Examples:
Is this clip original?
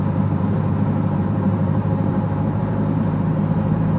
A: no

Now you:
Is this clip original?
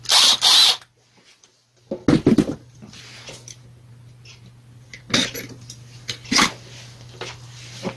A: yes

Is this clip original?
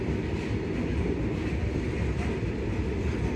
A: yes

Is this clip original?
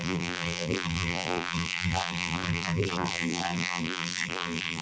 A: no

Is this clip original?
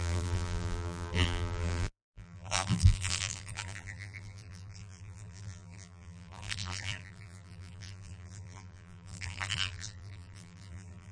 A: no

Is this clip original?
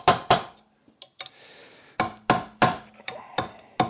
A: yes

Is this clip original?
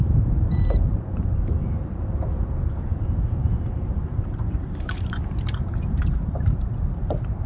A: no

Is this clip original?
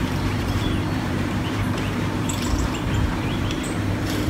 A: no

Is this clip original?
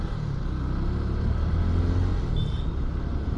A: yes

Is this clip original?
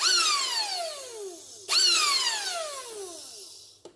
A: yes